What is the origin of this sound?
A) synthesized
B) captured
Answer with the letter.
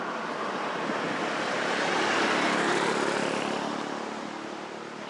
A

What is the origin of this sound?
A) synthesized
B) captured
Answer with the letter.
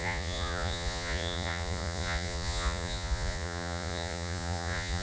A